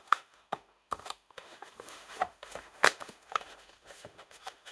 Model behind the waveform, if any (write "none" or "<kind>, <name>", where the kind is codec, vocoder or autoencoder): autoencoder, DAC-VAE